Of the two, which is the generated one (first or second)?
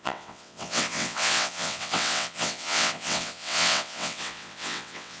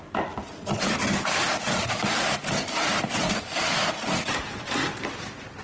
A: first